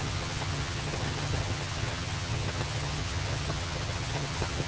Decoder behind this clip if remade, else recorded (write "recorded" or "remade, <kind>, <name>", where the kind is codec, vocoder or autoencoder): remade, vocoder, HiFi-GAN